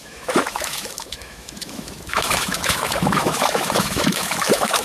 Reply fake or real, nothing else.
fake